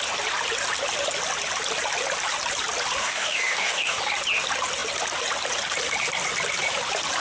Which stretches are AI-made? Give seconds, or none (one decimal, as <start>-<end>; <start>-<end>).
3.0-4.0